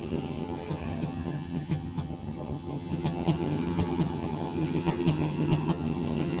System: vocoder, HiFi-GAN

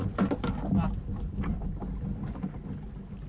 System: none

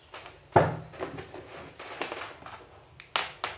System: none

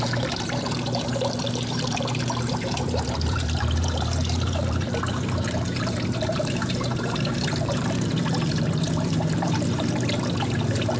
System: vocoder, BigVGAN v2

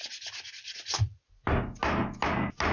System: none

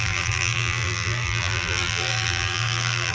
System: vocoder, BigVGAN v2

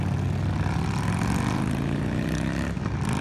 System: none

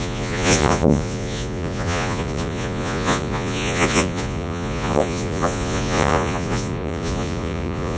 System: vocoder, Vocos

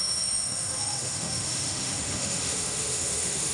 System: autoencoder, DAC-VAE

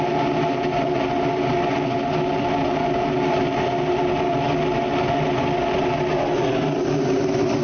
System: none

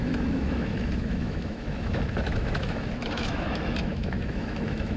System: autoencoder, DAC-VAE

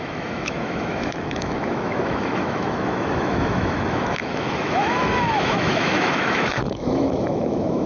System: autoencoder, DAC-VAE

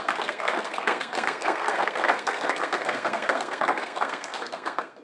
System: codec, SNAC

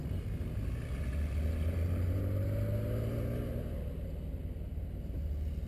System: none